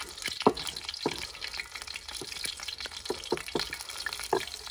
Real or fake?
real